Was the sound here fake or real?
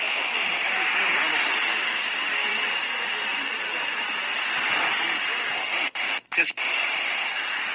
fake